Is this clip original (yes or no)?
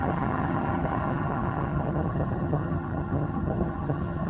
no